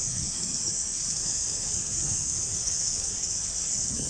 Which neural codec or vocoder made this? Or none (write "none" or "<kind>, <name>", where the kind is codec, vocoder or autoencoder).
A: codec, SNAC